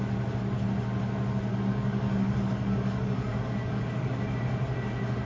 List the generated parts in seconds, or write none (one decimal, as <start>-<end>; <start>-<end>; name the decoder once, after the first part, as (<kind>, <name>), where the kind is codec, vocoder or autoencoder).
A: 1.5-4.2 (codec, DAC)